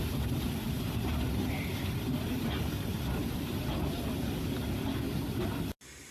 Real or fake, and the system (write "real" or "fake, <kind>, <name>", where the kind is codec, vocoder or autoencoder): real